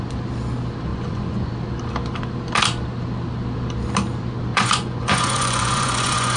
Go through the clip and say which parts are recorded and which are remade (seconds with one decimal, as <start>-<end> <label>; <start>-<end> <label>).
0.0-0.9 recorded; 0.9-1.5 remade; 1.5-4.5 recorded; 4.5-6.4 remade